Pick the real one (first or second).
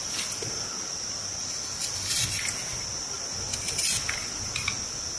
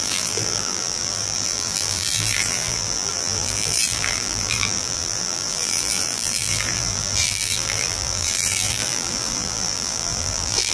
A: first